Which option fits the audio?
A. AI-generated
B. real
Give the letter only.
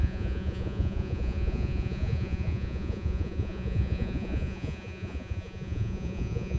A